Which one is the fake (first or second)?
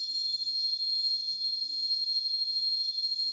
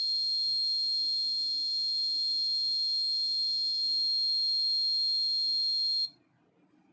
first